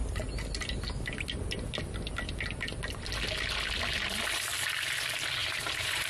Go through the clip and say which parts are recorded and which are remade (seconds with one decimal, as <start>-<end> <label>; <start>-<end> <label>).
0.0-5.4 recorded; 5.4-6.1 remade